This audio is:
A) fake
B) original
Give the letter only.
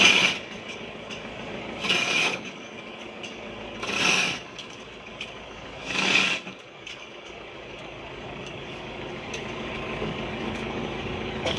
A